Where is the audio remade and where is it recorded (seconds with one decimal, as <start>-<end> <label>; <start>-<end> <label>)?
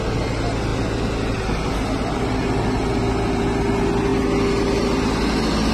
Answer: 0.0-5.7 recorded